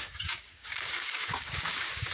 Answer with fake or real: fake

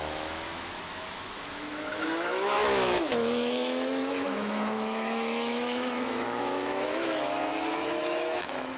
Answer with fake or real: fake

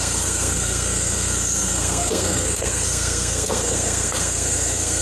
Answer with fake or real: fake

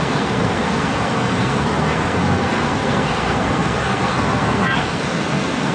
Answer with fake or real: fake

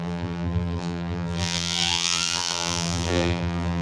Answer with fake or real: fake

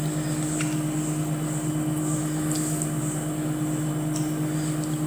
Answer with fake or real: real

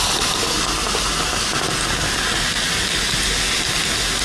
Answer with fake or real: real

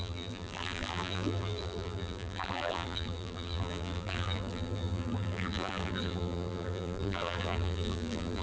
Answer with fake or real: fake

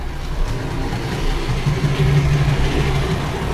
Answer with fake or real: real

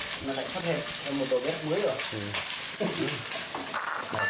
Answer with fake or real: real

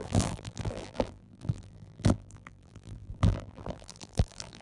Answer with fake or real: fake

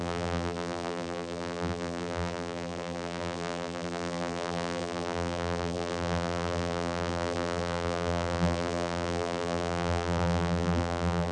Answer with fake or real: fake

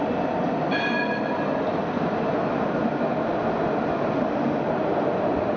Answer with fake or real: real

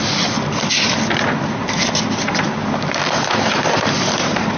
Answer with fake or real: real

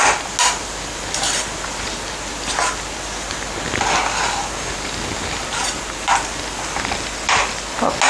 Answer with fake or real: real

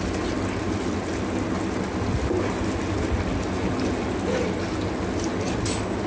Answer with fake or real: real